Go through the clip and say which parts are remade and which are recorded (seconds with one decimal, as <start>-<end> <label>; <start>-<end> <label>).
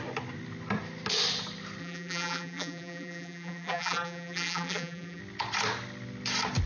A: 0.0-1.8 recorded; 1.8-5.2 remade; 5.2-6.7 recorded